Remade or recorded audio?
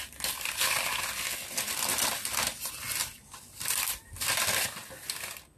recorded